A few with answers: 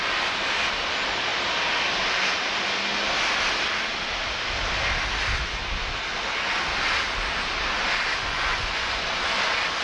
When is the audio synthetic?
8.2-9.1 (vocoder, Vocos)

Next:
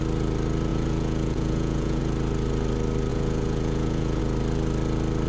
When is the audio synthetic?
0.7-2.0 (vocoder, Vocos); 3.1-4.2

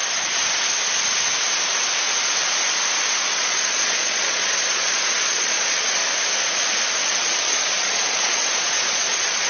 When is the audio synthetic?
3.2-6.0 (vocoder, Vocos); 7.0-9.5

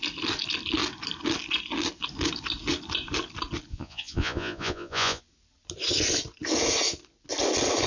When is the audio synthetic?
3.7-5.2 (vocoder, Vocos)

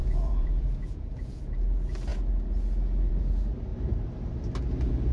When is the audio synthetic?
0.0-1.4 (vocoder, Vocos)

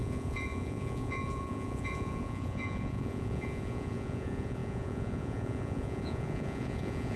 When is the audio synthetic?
0.0-7.2 (vocoder, Vocos)

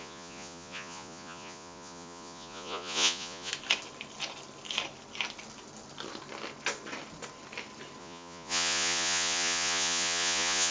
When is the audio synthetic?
0.0-3.5 (vocoder, Vocos); 8.0-10.7